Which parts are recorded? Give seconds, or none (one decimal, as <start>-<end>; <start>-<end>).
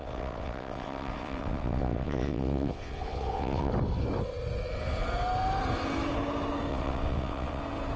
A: 3.7-6.7; 7.6-8.0